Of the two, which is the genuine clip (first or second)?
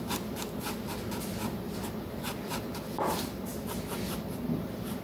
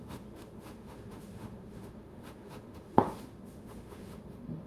first